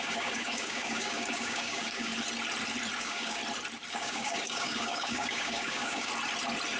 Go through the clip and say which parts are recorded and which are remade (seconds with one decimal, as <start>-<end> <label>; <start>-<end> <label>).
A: 0.0-2.1 remade; 2.1-3.0 recorded; 3.0-3.4 remade; 3.4-3.9 recorded; 3.9-6.1 remade; 6.1-6.8 recorded